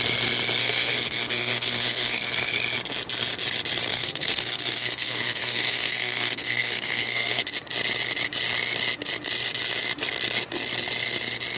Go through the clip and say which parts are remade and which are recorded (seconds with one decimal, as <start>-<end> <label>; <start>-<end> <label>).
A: 0.0-0.6 recorded; 0.6-2.2 remade; 2.2-3.9 recorded; 3.9-7.4 remade; 7.4-11.6 recorded